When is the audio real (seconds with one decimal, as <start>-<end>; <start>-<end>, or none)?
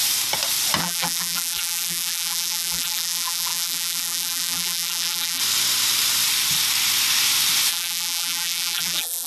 0.0-0.8; 5.4-7.7